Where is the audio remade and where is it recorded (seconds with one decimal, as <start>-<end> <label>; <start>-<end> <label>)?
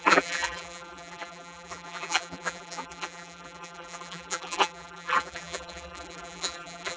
0.0-7.0 remade